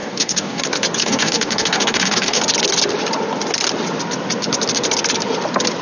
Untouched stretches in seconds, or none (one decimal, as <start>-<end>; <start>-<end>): 0.6-1.0; 2.4-5.8